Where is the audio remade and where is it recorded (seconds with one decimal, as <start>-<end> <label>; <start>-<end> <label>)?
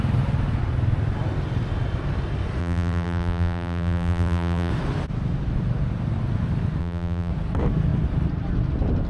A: 0.0-2.6 recorded; 2.6-4.7 remade; 4.7-6.8 recorded; 6.8-7.3 remade; 7.3-9.1 recorded